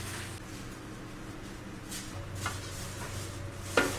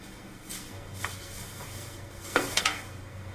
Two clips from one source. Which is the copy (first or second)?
second